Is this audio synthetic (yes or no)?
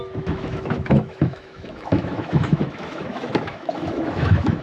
yes